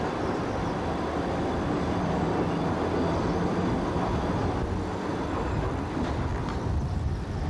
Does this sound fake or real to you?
real